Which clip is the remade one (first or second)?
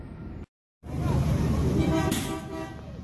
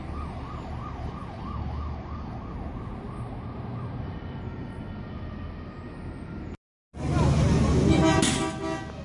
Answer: first